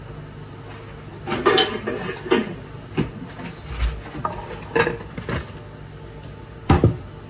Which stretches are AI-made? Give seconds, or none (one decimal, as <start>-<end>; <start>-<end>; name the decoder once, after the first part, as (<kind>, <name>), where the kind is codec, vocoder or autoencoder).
none